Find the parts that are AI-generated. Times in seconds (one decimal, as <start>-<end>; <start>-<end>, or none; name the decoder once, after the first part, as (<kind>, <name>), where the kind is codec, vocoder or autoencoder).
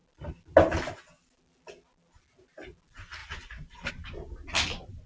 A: 3.2-3.9 (vocoder, BigVGAN v2)